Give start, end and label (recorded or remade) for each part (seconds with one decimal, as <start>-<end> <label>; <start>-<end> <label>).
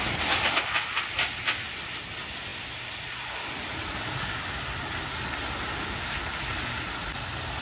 0.0-7.6 recorded